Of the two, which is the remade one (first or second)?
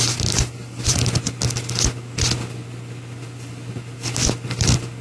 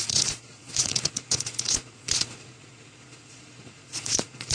second